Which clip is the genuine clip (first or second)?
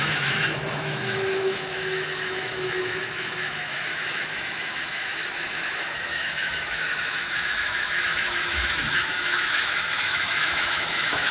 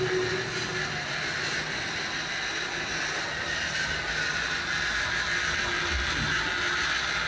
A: second